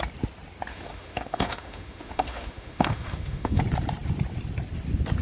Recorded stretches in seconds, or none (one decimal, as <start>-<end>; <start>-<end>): 0.0-0.7; 3.6-5.2

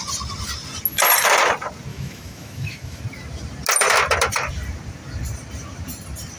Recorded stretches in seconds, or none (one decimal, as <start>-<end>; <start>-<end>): 0.0-1.9; 3.0-6.4

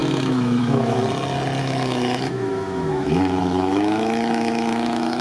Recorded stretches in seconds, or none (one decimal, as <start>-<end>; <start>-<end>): 1.0-1.6

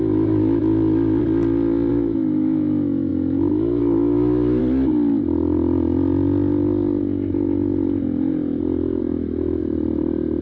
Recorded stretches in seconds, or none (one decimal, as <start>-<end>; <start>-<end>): 1.2-1.9; 4.6-9.0; 9.6-10.4